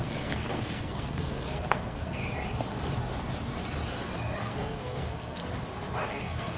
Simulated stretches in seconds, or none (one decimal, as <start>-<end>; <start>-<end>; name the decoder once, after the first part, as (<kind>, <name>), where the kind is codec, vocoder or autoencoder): 0.0-2.2 (codec, SNAC); 4.4-5.4; 6.1-6.6